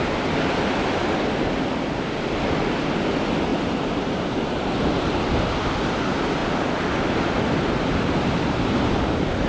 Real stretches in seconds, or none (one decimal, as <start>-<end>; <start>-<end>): 0.0-3.5; 5.5-9.5